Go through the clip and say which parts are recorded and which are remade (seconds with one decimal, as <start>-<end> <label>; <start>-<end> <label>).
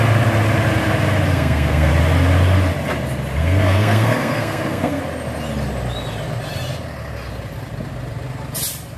0.0-1.3 recorded; 1.3-1.9 remade; 1.9-3.4 recorded; 3.4-5.0 remade; 5.0-9.0 recorded